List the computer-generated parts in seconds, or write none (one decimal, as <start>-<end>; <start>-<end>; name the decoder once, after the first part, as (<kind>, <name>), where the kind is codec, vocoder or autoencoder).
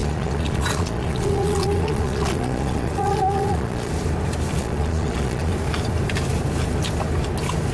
0.0-3.9 (vocoder, Vocos); 4.6-5.5